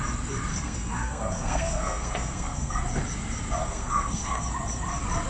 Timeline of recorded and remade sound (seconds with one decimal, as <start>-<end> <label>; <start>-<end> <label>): 0.0-0.5 recorded; 0.5-2.7 remade; 2.7-3.6 recorded; 3.6-4.4 remade; 4.4-5.3 recorded